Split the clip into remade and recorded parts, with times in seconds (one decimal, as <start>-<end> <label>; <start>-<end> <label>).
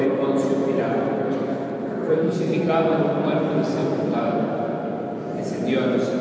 0.0-2.0 recorded; 2.0-2.6 remade; 2.6-3.8 recorded; 3.8-5.1 remade; 5.1-6.2 recorded